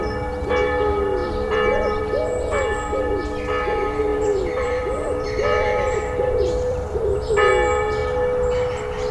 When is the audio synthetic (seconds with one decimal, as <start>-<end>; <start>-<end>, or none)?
1.2-2.0; 4.1-7.5